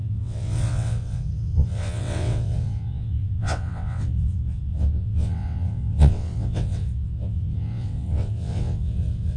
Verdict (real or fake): fake